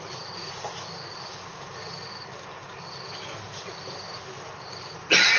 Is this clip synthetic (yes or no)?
no